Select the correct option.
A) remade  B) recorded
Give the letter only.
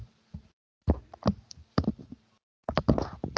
B